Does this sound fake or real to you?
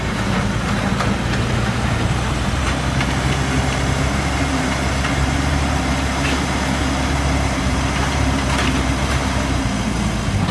fake